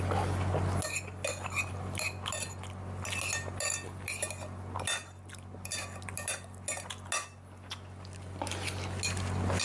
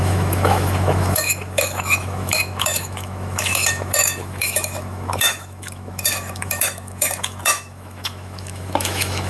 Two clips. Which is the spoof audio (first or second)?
second